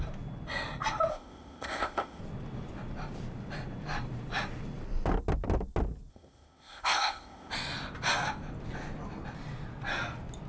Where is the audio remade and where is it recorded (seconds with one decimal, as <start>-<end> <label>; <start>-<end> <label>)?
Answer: 0.0-1.1 recorded; 1.1-2.2 remade; 2.2-6.1 recorded; 6.1-7.5 remade; 7.5-10.5 recorded